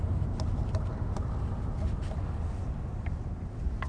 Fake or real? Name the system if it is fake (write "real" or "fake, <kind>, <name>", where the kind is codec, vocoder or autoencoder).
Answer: real